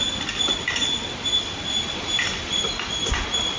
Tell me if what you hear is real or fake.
real